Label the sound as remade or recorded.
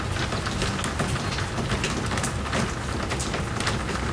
recorded